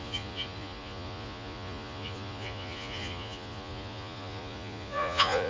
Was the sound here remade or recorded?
remade